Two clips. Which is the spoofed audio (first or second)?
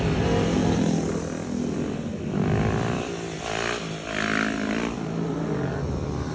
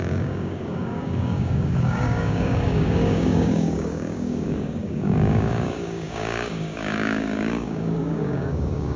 second